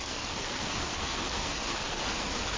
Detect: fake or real fake